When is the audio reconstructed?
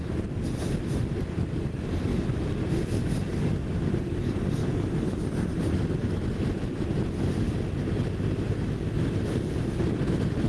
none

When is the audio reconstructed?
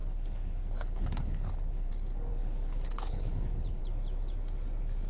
0.0-1.9 (codec, HILCodec); 2.3-3.8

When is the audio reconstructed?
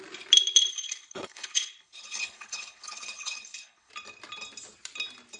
0.7-3.9 (codec, HILCodec)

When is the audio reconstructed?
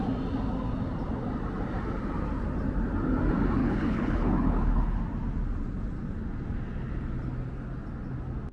3.6-5.0 (codec, HILCodec)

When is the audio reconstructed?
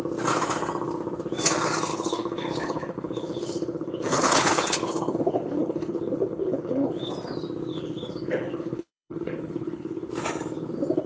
1.9-7.1 (codec, HILCodec); 7.7-10.1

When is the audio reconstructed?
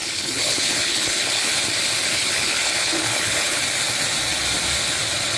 0.0-1.5 (codec, HILCodec); 2.1-3.6